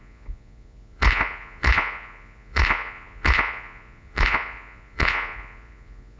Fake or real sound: fake